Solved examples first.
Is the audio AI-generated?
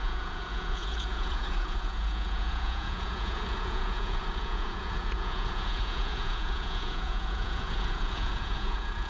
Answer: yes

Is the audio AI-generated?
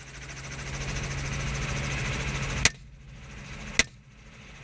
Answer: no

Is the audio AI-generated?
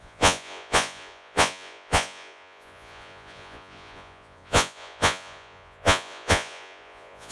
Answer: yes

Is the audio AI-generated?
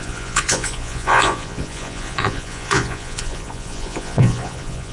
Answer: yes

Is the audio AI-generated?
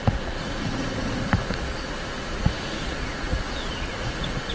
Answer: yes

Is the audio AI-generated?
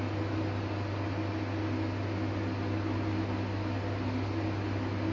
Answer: no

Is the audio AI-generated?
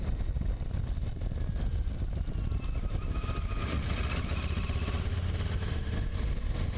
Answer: no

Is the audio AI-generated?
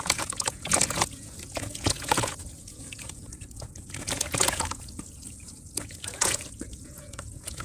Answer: yes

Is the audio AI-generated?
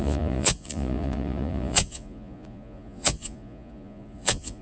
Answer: yes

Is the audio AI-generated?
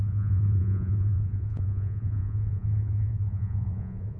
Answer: yes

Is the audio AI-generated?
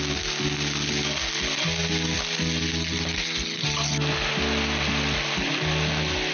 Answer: no